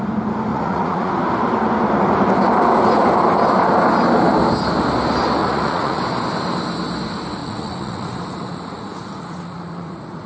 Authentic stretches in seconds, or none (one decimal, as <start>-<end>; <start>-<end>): 0.0-0.5; 1.1-5.4; 6.0-7.4